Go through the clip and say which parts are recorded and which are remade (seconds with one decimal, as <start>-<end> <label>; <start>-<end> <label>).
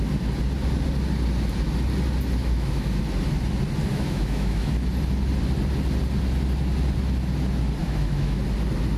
0.0-2.4 recorded; 2.4-3.0 remade; 3.0-3.9 recorded; 3.9-4.7 remade; 4.7-7.8 recorded; 7.8-8.4 remade; 8.4-9.0 recorded